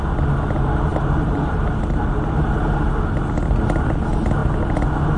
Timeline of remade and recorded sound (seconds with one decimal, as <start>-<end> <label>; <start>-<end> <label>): 0.0-0.9 recorded; 0.9-3.0 remade; 3.0-5.2 recorded